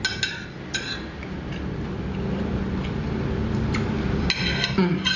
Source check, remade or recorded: recorded